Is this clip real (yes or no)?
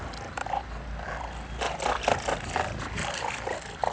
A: yes